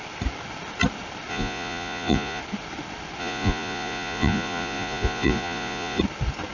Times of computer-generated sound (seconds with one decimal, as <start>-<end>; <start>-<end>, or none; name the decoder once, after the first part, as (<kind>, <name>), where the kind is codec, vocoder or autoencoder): 1.3-2.4 (vocoder, Vocos); 3.2-6.0